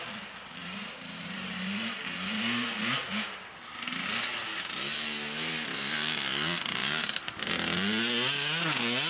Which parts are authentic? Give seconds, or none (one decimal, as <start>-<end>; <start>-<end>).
0.0-0.6; 1.9-6.8; 7.5-9.1